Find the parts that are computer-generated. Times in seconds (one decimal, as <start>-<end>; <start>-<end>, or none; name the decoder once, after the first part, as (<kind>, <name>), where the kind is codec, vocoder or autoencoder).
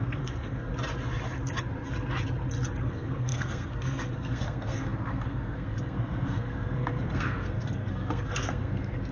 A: 0.0-0.7 (codec, SNAC); 2.8-9.1